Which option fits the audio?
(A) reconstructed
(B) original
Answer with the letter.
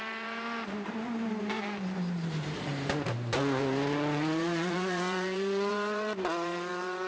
A